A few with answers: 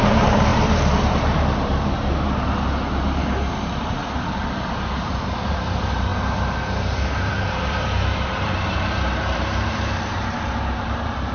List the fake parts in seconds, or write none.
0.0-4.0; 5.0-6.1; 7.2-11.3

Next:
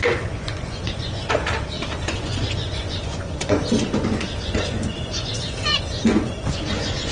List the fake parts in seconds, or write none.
0.0-1.2; 2.1-7.1